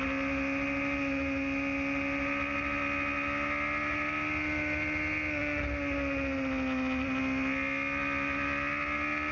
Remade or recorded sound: recorded